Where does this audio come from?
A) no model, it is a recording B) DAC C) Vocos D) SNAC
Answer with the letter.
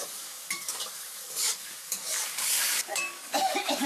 B